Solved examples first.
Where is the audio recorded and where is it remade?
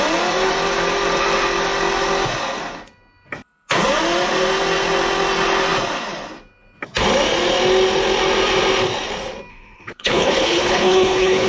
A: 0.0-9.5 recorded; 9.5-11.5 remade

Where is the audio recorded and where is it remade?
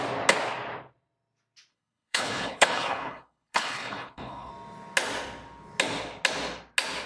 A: 0.0-1.7 recorded; 1.7-4.5 remade; 4.5-7.1 recorded